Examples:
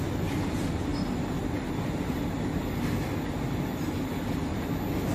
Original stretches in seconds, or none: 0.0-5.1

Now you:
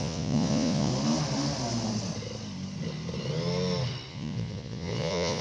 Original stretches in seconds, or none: 0.9-4.1

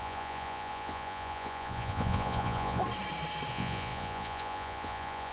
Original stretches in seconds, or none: 2.8-3.5

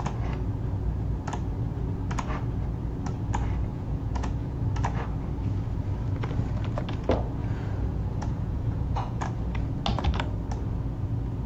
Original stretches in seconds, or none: 0.0-3.7; 4.6-7.4; 9.2-11.5

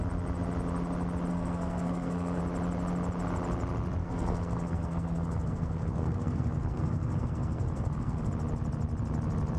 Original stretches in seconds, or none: 0.0-1.3; 2.4-4.0; 8.3-9.6

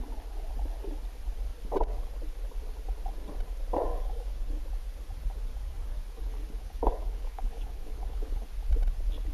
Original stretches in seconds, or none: 0.0-3.9; 4.6-5.5; 8.3-9.3

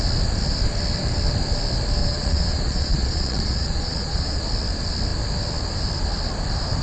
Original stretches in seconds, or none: 0.0-2.0; 4.4-6.8

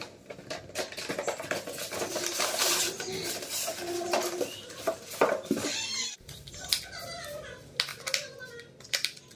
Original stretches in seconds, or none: 0.0-3.7; 6.8-7.9; 8.5-9.4